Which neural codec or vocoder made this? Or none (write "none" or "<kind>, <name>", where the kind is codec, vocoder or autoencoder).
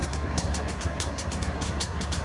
codec, SNAC